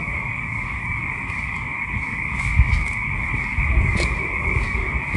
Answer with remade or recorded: remade